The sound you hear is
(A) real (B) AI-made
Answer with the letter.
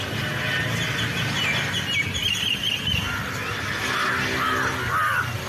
A